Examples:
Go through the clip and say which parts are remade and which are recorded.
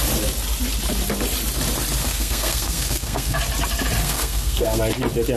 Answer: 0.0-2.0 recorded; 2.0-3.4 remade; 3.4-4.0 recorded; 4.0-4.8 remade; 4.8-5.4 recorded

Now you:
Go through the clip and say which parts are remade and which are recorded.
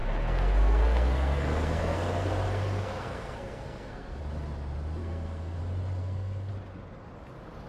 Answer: 0.0-4.2 remade; 4.2-5.0 recorded; 5.0-5.6 remade; 5.6-6.0 recorded; 6.0-6.5 remade; 6.5-7.7 recorded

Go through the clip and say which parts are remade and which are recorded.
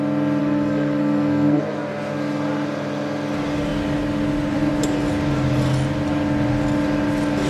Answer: 0.0-0.4 recorded; 0.4-1.6 remade; 1.6-7.5 recorded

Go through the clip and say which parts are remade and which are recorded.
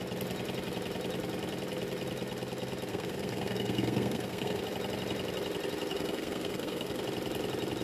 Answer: 0.0-2.9 recorded; 2.9-4.6 remade; 4.6-5.9 recorded; 5.9-7.0 remade; 7.0-7.8 recorded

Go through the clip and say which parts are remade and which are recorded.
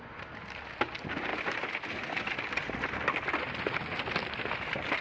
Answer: 0.0-5.0 recorded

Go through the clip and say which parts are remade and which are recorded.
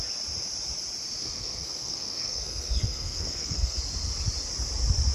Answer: 0.0-1.2 recorded; 1.2-3.8 remade; 3.8-5.1 recorded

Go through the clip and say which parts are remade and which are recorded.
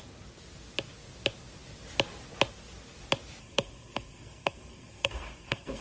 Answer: 0.0-3.4 recorded; 3.4-5.8 remade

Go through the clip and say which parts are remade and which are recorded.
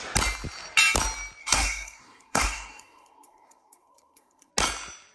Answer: 0.0-1.4 recorded; 1.4-4.5 remade; 4.5-5.1 recorded